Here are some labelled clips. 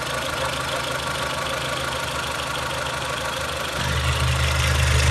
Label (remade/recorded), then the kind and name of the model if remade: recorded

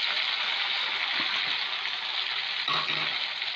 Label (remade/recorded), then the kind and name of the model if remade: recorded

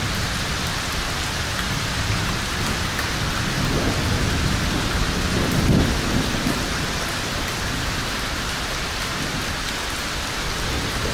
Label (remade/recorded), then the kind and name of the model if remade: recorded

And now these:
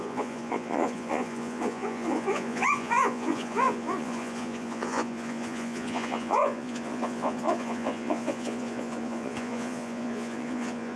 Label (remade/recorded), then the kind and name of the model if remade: remade, vocoder, Vocos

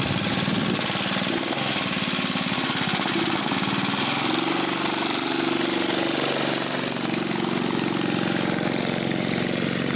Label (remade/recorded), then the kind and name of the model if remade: recorded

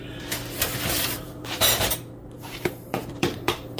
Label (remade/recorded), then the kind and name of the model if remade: remade, vocoder, BigVGAN v2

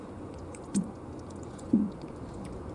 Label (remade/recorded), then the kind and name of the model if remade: remade, vocoder, Vocos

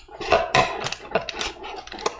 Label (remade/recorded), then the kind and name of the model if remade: recorded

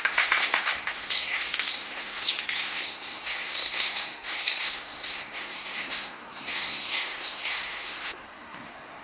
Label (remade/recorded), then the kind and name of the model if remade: remade, codec, SNAC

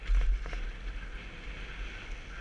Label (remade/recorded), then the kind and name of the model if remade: recorded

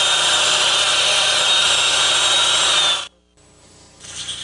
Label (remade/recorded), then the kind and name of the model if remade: recorded